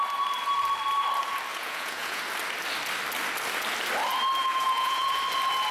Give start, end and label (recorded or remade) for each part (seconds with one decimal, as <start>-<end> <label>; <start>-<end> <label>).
0.0-1.5 recorded; 1.5-2.2 remade; 2.2-4.4 recorded; 4.4-5.2 remade; 5.2-5.7 recorded